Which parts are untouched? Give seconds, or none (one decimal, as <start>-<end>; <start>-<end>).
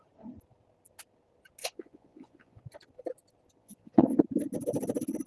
0.0-1.6; 2.6-3.6; 4.2-5.3